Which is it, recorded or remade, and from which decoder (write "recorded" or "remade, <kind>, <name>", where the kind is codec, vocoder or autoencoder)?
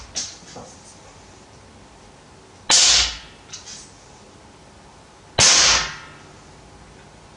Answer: recorded